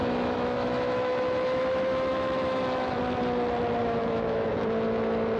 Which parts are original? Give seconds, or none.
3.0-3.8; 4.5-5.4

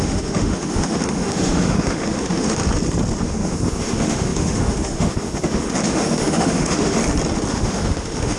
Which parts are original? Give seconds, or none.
2.6-3.2; 7.0-7.5